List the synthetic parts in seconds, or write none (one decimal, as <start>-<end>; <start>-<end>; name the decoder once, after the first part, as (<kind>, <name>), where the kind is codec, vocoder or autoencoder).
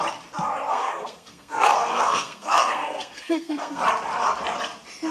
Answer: 0.7-3.8 (codec, SNAC)